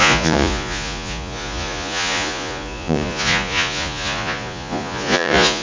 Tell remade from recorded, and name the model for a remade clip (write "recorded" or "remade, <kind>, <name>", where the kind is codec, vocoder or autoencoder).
remade, vocoder, Vocos